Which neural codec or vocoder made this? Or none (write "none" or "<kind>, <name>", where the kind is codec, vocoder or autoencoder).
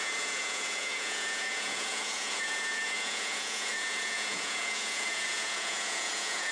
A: vocoder, Vocos